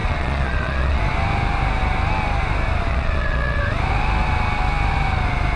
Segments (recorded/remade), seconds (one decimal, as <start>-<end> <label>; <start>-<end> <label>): 0.0-1.0 remade; 1.0-2.9 recorded; 2.9-3.6 remade; 3.6-5.6 recorded